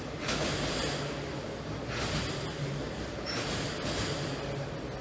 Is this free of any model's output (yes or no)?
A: yes